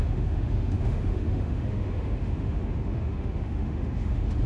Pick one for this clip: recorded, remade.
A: remade